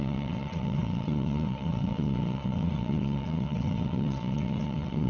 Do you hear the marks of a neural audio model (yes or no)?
yes